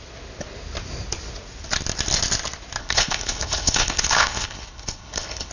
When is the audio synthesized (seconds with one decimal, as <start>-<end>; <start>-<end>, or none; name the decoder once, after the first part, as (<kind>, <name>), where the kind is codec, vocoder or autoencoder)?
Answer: 2.8-5.5 (codec, HILCodec)